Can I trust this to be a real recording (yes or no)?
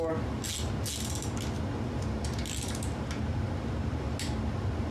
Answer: yes